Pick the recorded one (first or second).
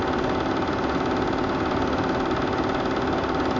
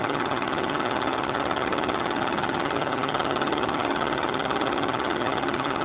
first